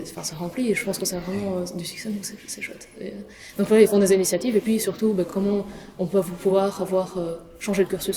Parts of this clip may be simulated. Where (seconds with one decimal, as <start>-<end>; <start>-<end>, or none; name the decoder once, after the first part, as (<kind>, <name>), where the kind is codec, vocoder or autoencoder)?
none